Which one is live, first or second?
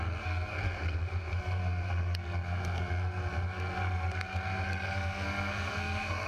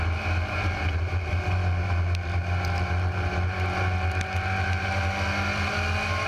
second